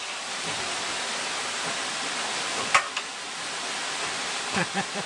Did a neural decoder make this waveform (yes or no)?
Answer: yes